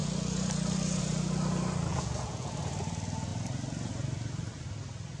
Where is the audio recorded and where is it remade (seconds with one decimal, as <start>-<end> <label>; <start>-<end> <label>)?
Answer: 0.0-1.9 recorded; 1.9-2.5 remade; 2.5-5.2 recorded